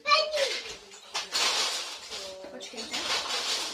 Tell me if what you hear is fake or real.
real